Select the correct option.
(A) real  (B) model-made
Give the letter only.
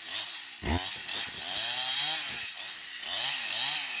A